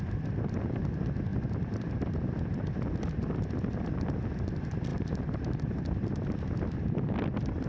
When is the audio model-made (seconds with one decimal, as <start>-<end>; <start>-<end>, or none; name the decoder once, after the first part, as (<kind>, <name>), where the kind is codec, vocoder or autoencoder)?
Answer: 4.9-5.6 (vocoder, BigVGAN v2)